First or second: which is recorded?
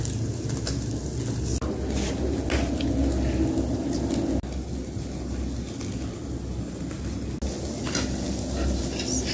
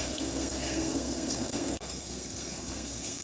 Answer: first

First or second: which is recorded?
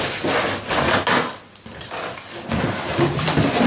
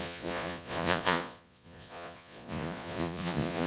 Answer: first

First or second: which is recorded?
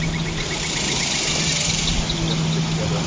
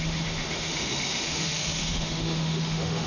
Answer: first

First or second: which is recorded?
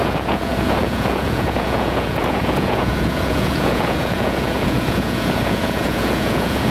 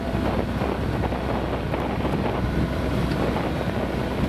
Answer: second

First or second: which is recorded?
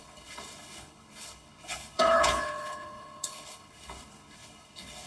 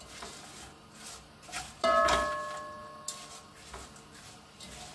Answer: second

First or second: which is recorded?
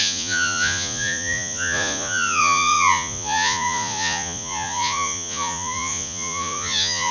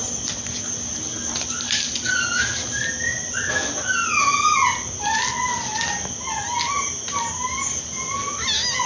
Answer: second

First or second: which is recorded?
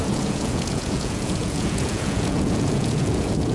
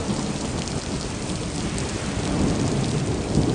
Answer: second